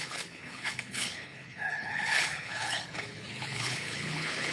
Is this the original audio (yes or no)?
no